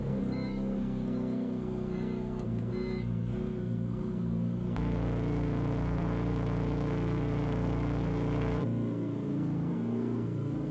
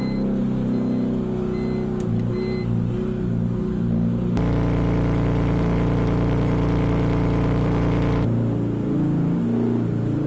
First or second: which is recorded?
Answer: second